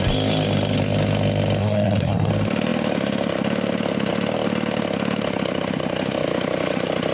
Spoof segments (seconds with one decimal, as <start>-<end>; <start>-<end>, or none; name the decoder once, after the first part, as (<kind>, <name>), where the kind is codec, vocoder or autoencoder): 1.6-2.3 (codec, SNAC)